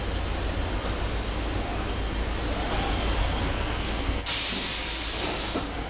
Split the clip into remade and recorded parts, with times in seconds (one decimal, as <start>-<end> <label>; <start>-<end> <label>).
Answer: 0.0-3.2 recorded; 3.2-4.3 remade; 4.3-5.9 recorded